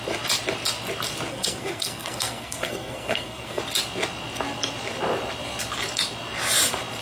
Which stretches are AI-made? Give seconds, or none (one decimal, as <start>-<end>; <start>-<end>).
1.3-3.6